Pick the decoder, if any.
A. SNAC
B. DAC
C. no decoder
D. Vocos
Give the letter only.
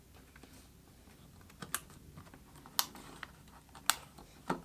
C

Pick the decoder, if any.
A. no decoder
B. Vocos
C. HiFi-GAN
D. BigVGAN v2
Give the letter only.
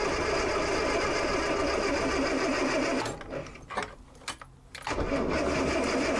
A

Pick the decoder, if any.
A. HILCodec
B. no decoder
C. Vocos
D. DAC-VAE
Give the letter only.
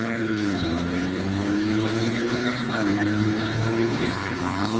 A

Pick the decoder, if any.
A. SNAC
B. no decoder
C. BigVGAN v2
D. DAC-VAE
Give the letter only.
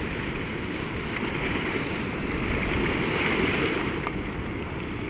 B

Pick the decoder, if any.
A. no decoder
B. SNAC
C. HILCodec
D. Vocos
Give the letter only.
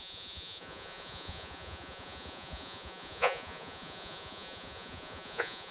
D